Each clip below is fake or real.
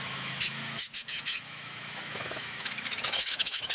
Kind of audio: fake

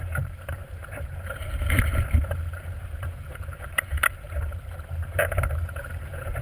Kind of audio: fake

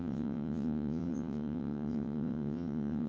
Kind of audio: fake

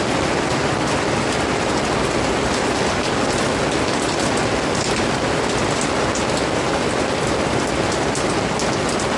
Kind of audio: real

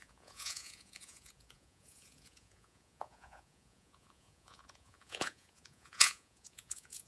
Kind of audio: fake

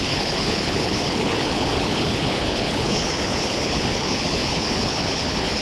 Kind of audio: fake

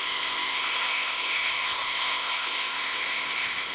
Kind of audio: fake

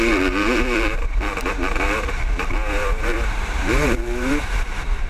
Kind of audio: fake